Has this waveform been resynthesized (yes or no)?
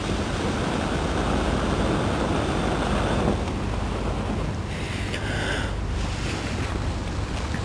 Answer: no